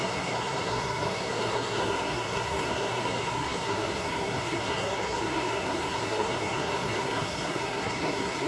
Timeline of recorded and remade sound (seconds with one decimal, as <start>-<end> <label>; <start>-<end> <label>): 0.0-8.5 remade